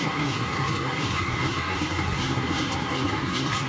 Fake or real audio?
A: fake